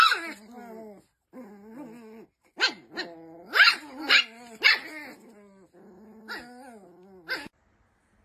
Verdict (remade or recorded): recorded